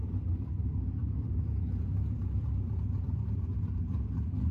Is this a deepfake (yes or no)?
yes